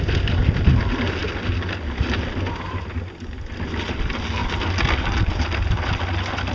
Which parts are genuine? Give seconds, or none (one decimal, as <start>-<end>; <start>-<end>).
0.0-6.5